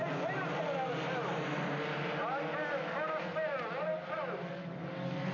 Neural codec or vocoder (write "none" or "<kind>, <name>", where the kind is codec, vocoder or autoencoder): none